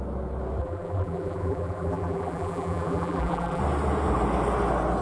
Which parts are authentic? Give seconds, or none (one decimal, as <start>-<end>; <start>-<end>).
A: 0.0-0.6; 3.6-5.0

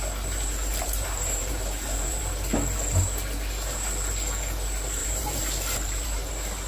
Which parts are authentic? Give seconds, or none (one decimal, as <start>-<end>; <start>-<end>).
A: 0.0-0.7; 2.2-5.0; 6.3-6.7

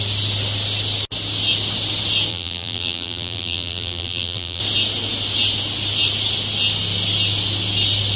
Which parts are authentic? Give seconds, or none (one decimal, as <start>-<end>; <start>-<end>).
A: 0.0-2.3; 4.6-8.2

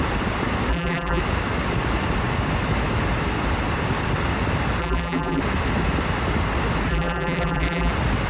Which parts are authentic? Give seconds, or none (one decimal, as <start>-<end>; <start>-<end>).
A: 0.0-0.7; 1.2-4.8; 5.4-6.9; 7.9-8.3